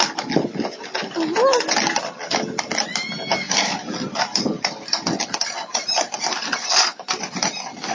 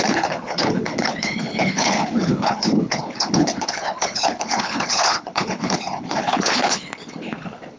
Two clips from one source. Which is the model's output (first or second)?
second